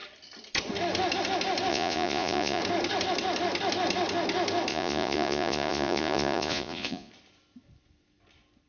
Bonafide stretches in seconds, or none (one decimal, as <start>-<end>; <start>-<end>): 0.0-1.7; 2.6-4.7; 7.1-8.7